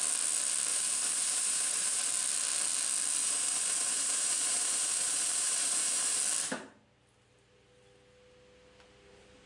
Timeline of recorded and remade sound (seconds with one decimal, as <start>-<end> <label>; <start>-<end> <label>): 0.0-0.7 recorded; 0.7-2.1 remade; 2.1-3.2 recorded; 3.2-6.2 remade; 6.2-9.5 recorded